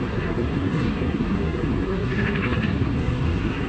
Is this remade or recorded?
remade